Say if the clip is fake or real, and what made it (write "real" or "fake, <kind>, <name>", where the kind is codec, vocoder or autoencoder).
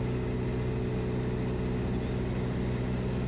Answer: real